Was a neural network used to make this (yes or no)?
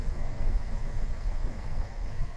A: yes